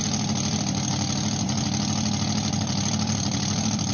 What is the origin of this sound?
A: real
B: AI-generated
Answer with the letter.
A